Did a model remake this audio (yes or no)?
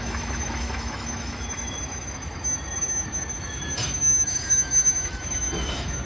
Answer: yes